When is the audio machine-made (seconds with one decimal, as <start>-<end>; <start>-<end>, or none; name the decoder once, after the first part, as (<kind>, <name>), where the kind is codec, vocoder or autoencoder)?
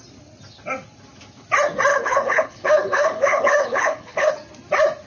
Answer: 1.9-4.3 (codec, HILCodec)